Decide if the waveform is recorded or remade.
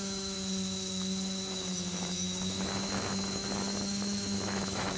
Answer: remade